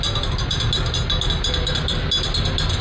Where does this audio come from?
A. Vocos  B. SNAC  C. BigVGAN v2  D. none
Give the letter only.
D